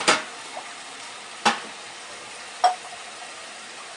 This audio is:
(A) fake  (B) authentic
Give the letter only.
A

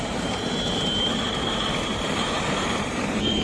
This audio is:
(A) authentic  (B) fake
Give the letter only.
B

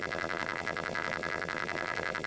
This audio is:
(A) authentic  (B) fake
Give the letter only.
B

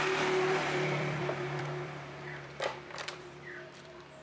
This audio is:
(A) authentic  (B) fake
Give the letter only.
B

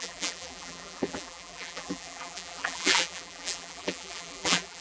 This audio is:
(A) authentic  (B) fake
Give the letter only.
B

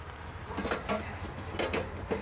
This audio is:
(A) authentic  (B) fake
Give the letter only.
A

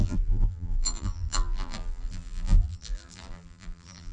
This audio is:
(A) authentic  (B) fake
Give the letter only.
B